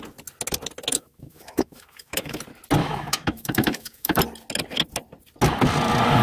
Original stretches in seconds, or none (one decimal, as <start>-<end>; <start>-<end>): 0.0-0.9; 2.4-2.8; 4.2-6.2